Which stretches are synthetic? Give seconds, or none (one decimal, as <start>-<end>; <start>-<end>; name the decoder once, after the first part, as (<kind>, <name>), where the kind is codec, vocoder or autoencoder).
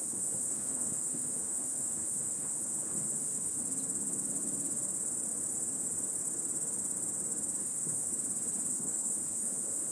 0.0-3.6 (codec, HILCodec); 7.6-8.1; 8.7-9.9